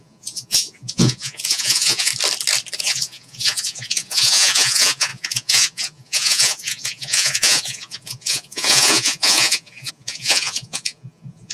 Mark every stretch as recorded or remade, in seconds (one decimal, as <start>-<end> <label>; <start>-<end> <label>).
0.0-2.1 remade; 2.1-2.8 recorded; 2.8-11.5 remade